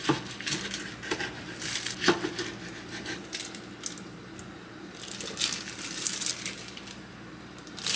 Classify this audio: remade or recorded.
recorded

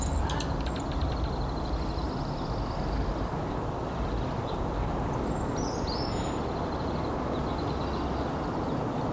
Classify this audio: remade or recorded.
recorded